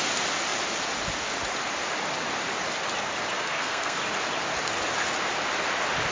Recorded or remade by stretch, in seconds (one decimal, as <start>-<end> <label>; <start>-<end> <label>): 0.0-3.3 recorded; 3.3-4.0 remade; 4.0-6.1 recorded